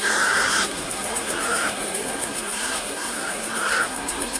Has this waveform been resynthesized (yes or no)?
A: yes